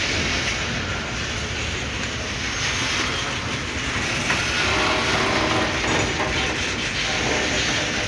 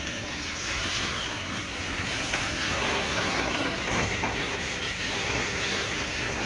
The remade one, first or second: second